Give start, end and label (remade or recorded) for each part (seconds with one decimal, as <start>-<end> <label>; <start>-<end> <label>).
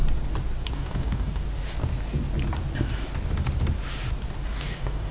0.0-0.7 recorded; 0.7-1.4 remade; 1.4-4.5 recorded; 4.5-5.1 remade